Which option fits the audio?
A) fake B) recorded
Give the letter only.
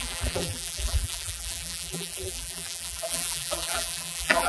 A